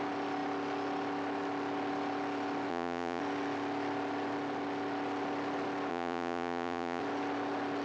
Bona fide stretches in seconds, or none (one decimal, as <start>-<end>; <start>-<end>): 0.0-2.7; 3.2-5.9; 7.0-7.8